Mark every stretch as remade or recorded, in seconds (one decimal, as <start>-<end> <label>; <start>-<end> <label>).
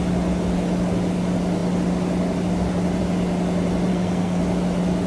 0.0-3.9 recorded; 3.9-4.4 remade; 4.4-5.1 recorded